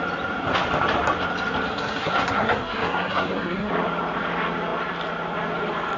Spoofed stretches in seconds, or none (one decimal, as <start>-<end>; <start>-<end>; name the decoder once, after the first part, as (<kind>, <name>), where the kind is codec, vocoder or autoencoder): 1.7-3.7 (codec, SNAC)